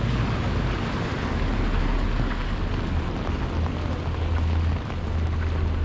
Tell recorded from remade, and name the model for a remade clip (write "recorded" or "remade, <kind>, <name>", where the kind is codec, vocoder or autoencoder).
recorded